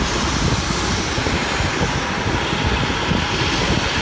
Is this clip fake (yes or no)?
no